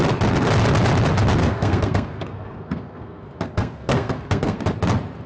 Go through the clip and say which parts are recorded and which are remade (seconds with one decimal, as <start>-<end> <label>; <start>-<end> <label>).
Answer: 0.0-1.4 recorded; 1.4-4.6 remade; 4.6-5.3 recorded